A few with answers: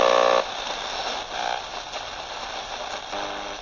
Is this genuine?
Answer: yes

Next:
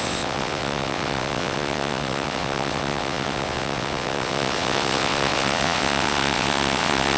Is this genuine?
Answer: no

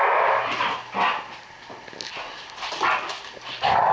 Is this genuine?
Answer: yes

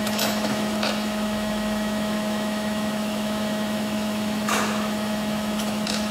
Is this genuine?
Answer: no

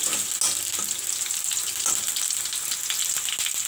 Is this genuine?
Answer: yes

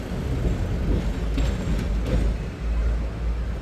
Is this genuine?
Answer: yes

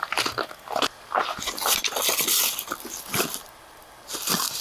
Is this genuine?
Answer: yes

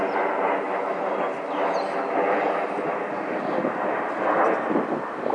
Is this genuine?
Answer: yes